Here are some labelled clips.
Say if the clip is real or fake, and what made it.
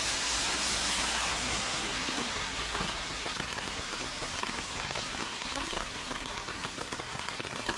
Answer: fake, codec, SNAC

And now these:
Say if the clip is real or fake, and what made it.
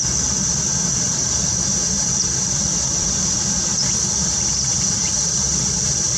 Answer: real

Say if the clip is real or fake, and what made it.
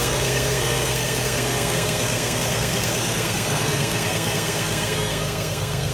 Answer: fake, codec, SNAC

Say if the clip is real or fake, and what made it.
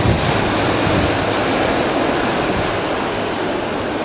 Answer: real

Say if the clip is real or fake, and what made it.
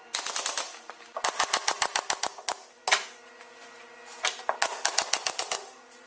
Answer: real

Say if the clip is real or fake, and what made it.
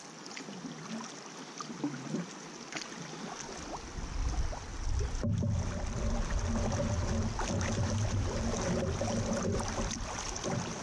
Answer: real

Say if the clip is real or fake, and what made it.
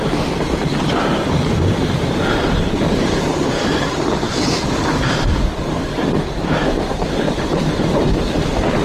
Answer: fake, vocoder, BigVGAN v2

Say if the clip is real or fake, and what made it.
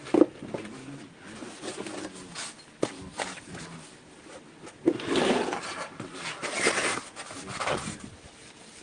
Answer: real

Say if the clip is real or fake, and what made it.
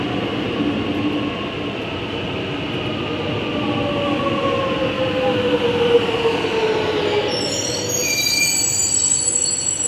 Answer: real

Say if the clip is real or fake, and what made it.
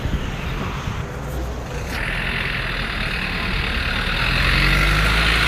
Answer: real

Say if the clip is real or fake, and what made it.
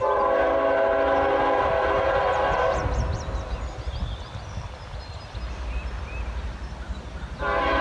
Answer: real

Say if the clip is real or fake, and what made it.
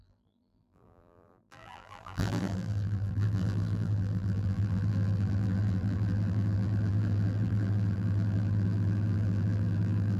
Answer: fake, vocoder, BigVGAN v2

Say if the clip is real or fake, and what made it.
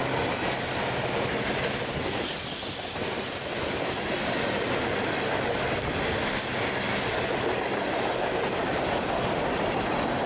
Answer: fake, vocoder, BigVGAN v2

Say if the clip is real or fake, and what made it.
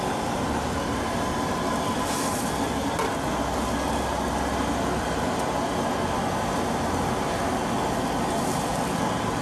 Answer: real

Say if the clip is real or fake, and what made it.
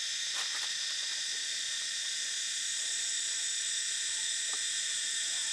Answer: real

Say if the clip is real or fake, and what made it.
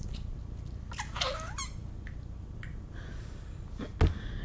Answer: real